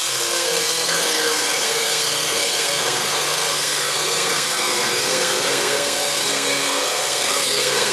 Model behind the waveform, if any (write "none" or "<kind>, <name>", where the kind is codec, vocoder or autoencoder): codec, SNAC